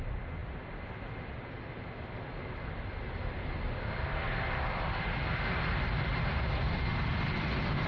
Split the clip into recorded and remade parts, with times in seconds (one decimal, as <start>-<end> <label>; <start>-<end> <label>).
0.0-7.9 recorded